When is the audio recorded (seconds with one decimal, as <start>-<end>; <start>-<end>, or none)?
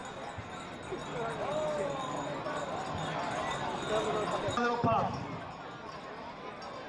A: 0.0-6.9